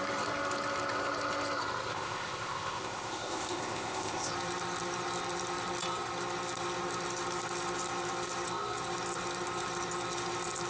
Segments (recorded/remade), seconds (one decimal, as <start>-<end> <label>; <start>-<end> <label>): 0.0-1.9 recorded; 1.9-4.3 remade; 4.3-10.7 recorded